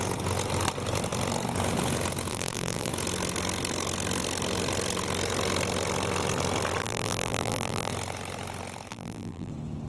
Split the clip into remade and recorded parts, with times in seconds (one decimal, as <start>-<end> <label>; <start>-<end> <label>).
0.0-2.3 recorded; 2.3-2.9 remade; 2.9-6.8 recorded; 6.8-7.9 remade; 7.9-8.9 recorded; 8.9-9.5 remade; 9.5-9.9 recorded